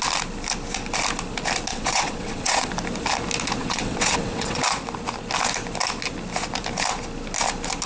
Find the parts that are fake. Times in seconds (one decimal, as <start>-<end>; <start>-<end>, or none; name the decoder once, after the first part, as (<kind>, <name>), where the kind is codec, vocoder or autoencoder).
1.7-2.7 (vocoder, WaveNeXt); 3.6-4.6